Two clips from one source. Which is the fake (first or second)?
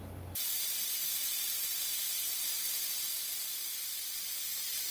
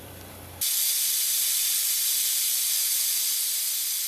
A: second